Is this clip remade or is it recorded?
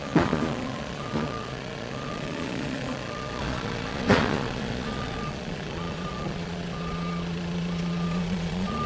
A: remade